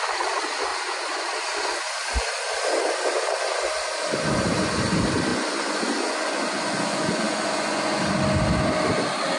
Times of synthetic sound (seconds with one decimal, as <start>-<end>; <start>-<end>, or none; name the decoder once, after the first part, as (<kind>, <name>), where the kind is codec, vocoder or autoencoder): 0.7-1.3 (vocoder, Vocos); 5.3-8.0